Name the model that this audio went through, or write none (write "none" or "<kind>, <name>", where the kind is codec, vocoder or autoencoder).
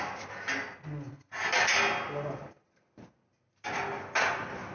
none